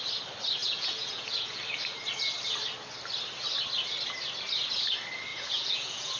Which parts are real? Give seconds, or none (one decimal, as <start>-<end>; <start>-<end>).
0.0-0.6; 1.6-5.3